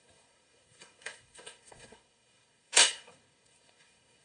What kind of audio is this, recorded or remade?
remade